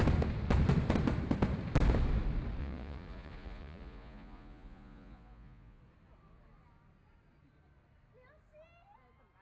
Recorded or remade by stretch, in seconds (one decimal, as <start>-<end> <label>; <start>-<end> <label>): 0.0-2.6 recorded; 2.6-5.8 remade; 5.8-9.4 recorded